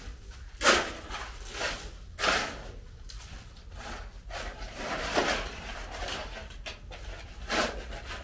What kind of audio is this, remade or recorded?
recorded